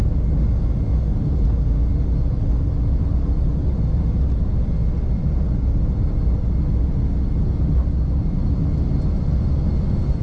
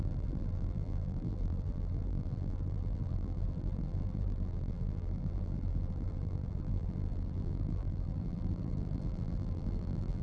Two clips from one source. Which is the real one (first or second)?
first